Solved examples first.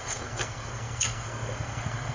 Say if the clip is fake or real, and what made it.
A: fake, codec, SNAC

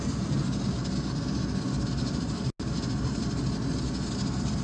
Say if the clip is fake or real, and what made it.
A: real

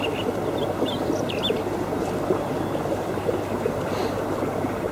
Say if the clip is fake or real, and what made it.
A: real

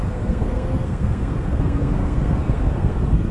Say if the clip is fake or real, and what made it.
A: fake, codec, SNAC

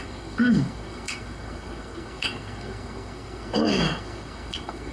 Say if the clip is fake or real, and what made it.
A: fake, codec, SNAC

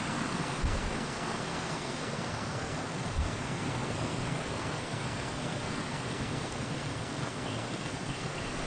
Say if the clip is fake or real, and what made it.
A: fake, codec, SNAC